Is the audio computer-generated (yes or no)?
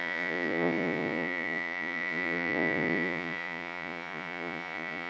yes